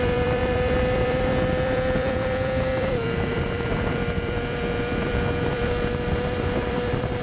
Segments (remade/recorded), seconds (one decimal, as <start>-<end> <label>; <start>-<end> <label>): 0.0-7.2 remade